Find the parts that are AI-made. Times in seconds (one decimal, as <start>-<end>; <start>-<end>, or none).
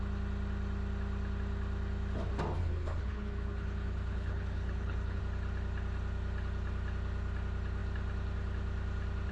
2.6-5.2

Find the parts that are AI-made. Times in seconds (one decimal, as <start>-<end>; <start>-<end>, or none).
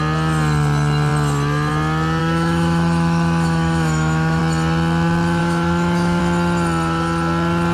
2.2-4.4; 5.4-6.2